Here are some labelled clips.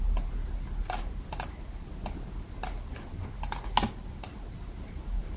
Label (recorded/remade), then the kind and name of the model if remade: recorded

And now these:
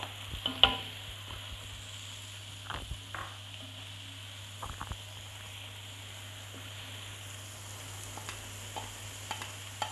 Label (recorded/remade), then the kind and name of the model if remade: recorded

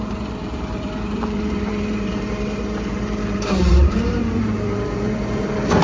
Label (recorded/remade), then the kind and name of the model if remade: remade, vocoder, BigVGAN v2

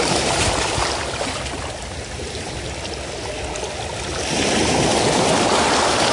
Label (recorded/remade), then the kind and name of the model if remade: recorded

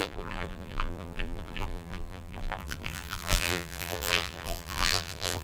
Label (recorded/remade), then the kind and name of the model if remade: remade, vocoder, BigVGAN v2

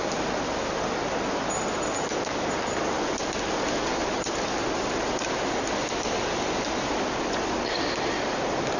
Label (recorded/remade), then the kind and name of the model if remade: recorded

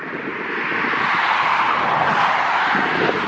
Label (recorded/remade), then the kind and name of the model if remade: recorded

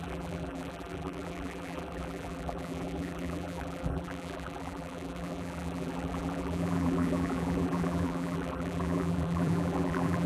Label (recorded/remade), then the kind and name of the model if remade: remade, vocoder, BigVGAN v2